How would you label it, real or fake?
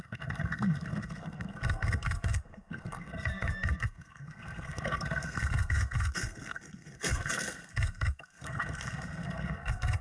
fake